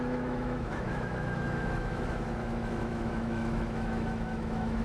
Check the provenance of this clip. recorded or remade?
remade